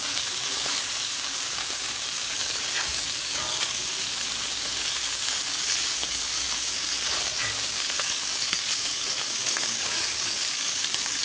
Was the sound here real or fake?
fake